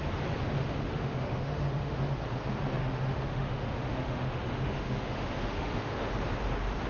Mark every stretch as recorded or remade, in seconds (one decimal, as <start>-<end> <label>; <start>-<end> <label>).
0.0-0.6 recorded; 0.6-2.2 remade; 2.2-2.8 recorded; 2.8-6.1 remade; 6.1-6.9 recorded